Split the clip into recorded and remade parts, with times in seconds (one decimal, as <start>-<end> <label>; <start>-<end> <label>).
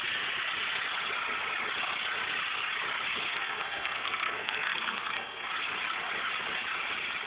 0.0-3.3 recorded; 3.3-5.5 remade; 5.5-7.3 recorded